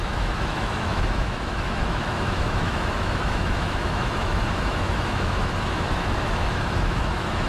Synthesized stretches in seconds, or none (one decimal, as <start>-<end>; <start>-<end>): 0.0-7.5